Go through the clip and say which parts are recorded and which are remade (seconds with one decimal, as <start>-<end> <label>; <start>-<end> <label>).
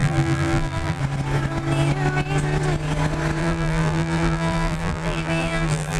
0.0-1.0 remade; 1.0-3.4 recorded; 3.4-6.0 remade